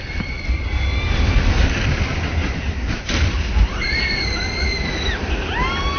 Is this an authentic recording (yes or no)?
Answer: yes